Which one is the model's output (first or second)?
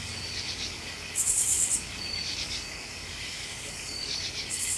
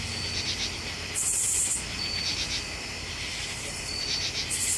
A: first